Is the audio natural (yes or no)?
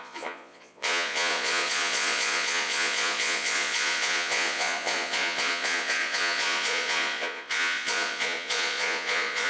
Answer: no